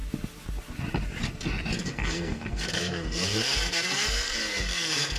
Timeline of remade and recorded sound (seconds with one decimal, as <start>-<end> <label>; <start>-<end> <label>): 0.0-1.8 recorded; 1.8-5.2 remade